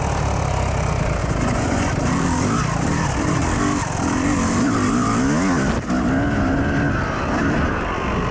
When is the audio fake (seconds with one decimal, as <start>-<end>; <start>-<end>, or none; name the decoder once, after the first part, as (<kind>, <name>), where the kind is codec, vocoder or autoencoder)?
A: 1.2-1.9 (vocoder, Vocos)